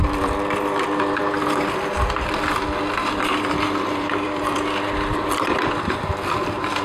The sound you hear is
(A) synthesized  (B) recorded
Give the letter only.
A